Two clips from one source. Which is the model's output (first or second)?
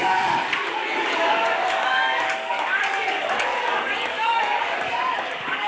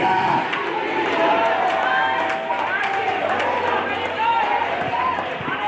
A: first